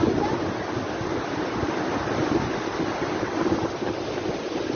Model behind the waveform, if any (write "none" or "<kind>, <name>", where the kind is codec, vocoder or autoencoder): none